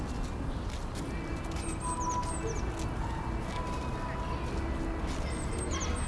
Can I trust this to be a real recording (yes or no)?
yes